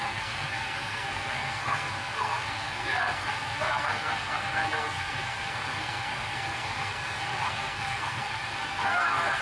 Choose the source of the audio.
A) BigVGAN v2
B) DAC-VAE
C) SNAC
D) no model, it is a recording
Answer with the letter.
C